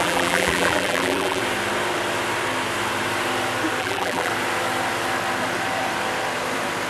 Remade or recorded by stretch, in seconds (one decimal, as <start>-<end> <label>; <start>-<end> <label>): 0.0-1.4 remade; 1.4-3.8 recorded; 3.8-4.3 remade; 4.3-6.9 recorded